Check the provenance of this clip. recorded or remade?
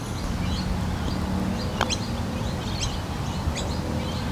recorded